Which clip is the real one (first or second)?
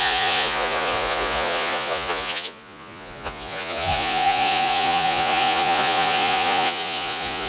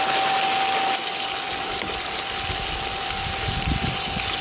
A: second